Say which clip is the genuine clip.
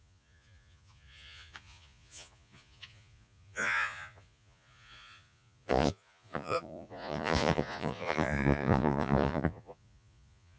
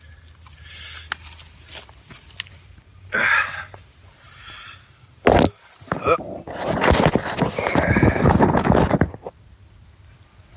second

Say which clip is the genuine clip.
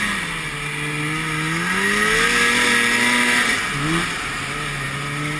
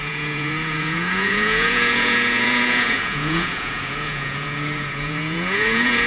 first